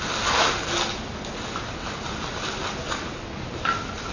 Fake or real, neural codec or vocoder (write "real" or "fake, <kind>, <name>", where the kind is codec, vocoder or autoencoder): real